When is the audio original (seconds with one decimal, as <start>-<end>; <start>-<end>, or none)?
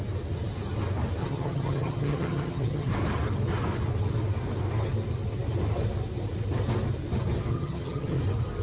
0.0-1.2; 2.9-7.5; 8.2-8.6